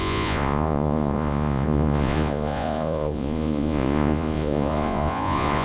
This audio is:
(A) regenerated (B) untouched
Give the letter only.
A